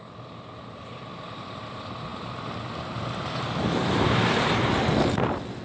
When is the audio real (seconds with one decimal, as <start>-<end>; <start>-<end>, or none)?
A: 0.0-5.6